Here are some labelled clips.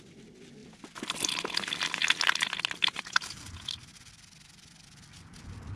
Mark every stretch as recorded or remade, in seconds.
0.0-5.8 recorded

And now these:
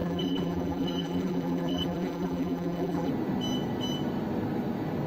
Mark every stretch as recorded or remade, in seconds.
0.0-3.1 remade; 3.1-5.1 recorded

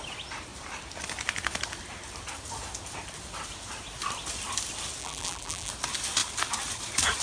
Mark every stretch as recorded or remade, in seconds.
0.0-5.0 recorded; 5.0-5.7 remade; 5.7-7.2 recorded

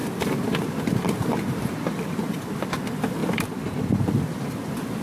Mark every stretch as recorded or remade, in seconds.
0.0-2.8 remade; 2.8-3.2 recorded; 3.2-5.0 remade